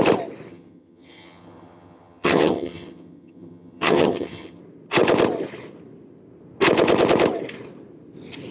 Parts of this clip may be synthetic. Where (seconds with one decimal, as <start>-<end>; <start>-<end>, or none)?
0.5-4.6